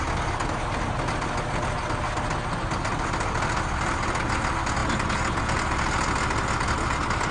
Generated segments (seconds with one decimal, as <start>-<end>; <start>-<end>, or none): none

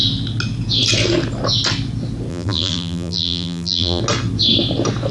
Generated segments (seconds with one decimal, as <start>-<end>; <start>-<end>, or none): 2.3-4.0

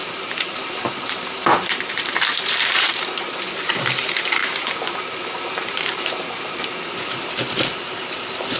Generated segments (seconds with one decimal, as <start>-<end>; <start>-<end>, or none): 0.0-4.4; 5.2-8.6

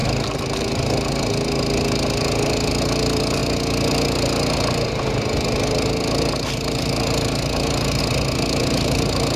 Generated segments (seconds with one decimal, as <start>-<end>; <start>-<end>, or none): none

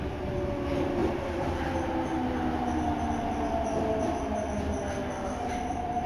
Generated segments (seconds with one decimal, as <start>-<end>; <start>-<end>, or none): 1.0-1.6

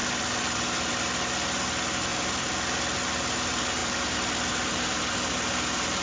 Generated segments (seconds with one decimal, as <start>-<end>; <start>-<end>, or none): 0.0-0.9; 2.1-2.6; 3.8-5.3